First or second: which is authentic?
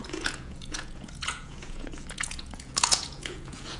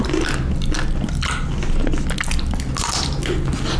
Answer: second